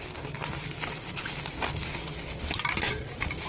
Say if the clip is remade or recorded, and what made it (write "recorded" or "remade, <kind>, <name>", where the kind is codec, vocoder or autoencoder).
recorded